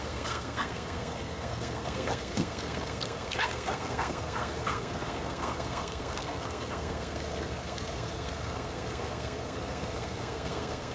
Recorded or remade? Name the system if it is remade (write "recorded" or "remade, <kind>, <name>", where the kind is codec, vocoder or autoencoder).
remade, codec, SNAC